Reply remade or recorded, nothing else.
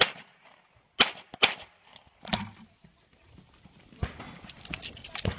recorded